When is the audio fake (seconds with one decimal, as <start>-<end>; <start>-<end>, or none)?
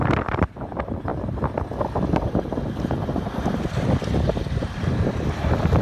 none